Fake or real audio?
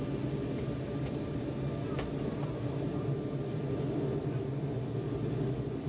real